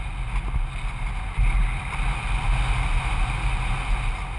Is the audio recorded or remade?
recorded